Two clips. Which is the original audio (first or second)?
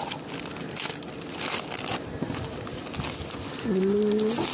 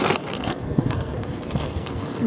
first